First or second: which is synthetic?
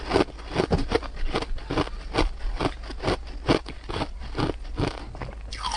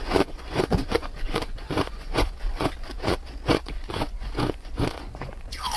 second